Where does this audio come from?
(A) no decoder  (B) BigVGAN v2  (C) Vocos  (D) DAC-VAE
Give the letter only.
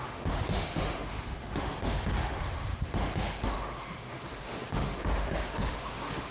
D